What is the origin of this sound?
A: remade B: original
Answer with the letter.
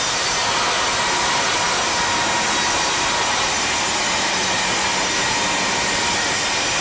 B